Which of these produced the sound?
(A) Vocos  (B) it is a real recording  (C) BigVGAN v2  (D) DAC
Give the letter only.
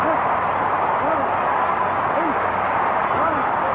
B